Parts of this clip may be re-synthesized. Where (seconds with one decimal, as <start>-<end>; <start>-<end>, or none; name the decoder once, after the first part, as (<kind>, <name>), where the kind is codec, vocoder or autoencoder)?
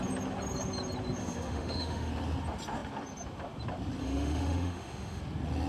1.2-2.1 (autoencoder, DAC-VAE); 4.0-5.2